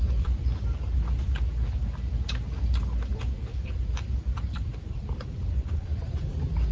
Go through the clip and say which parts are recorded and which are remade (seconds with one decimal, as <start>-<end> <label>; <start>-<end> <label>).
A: 0.0-0.5 remade; 0.5-4.1 recorded; 4.1-6.7 remade

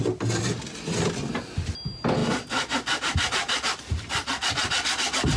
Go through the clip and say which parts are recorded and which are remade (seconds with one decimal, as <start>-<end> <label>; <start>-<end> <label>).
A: 0.0-2.2 recorded; 2.2-5.4 remade